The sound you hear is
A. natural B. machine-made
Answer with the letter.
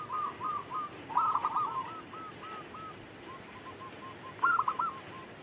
A